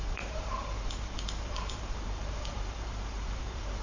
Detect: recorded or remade remade